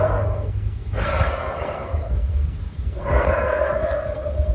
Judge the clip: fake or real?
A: fake